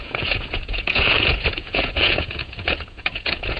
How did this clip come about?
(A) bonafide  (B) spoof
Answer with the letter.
B